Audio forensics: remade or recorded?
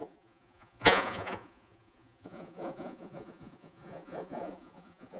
remade